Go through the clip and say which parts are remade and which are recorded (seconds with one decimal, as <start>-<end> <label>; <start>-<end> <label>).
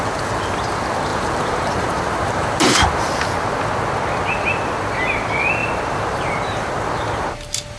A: 0.0-1.1 recorded; 1.1-3.1 remade; 3.1-5.6 recorded; 5.6-7.2 remade; 7.2-7.8 recorded